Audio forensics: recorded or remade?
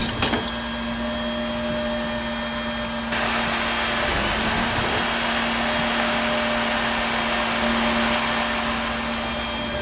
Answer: recorded